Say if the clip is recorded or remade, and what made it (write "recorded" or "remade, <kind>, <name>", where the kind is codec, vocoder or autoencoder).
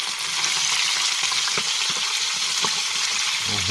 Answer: recorded